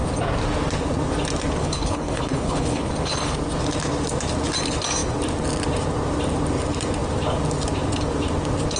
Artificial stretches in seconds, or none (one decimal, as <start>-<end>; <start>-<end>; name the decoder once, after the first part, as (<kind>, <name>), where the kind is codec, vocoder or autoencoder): 1.6-2.9 (codec, HILCodec)